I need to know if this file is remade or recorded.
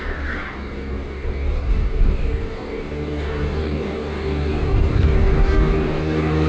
remade